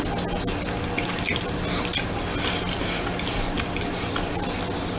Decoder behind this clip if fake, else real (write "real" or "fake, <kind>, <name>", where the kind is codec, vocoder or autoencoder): real